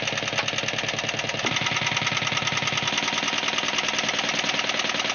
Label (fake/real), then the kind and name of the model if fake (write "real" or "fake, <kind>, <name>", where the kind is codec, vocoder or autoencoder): real